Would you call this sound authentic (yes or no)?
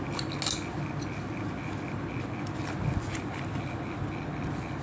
yes